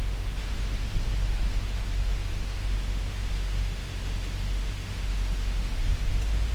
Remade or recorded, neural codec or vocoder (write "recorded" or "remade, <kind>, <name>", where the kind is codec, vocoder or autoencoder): remade, autoencoder, DAC-VAE